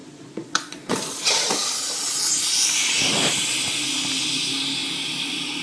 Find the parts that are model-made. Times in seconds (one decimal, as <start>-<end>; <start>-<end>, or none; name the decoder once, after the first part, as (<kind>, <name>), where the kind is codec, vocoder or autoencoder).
0.0-1.5 (vocoder, Vocos)

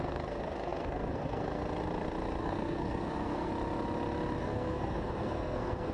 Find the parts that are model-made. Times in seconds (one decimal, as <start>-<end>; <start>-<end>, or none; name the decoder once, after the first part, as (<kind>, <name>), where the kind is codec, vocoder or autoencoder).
0.0-1.6 (codec, SNAC); 2.4-3.5; 4.4-5.9

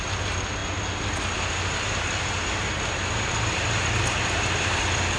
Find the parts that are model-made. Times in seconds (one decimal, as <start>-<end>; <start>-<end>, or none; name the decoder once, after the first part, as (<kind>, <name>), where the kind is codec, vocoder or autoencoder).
none

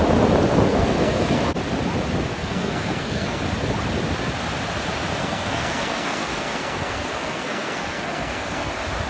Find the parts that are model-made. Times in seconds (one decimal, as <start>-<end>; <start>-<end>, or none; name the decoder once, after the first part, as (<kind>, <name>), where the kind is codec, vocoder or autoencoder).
0.7-1.5 (codec, SNAC); 2.3-3.4; 5.2-8.7

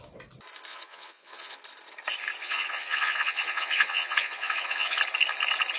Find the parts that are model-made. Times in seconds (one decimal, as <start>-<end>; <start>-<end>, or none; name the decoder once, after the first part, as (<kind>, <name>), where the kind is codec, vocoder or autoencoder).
0.7-1.6 (vocoder, Vocos); 2.4-5.0

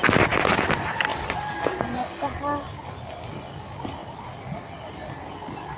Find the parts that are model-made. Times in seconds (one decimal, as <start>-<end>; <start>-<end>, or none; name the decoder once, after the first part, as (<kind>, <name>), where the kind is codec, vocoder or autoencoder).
none

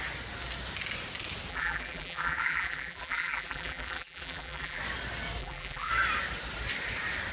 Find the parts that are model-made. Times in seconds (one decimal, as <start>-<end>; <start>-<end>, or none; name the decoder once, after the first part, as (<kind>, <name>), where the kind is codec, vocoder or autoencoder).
1.5-4.8 (vocoder, BigVGAN v2); 5.4-5.9

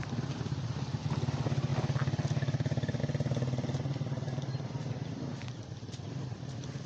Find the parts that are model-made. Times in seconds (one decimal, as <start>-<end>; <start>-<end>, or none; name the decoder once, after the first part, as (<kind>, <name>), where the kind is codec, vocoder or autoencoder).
4.5-6.9 (vocoder, BigVGAN v2)